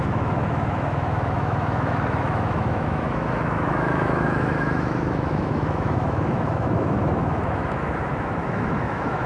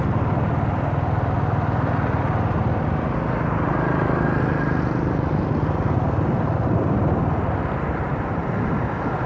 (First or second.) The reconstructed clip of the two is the first